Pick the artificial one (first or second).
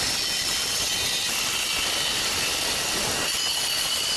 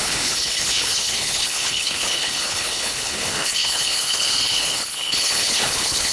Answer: second